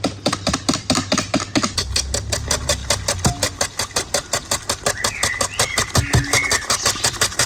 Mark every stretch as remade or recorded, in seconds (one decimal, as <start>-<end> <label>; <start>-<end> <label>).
0.0-7.5 recorded